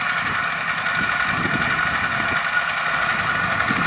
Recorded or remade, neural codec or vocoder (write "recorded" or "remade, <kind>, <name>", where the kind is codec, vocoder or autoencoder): recorded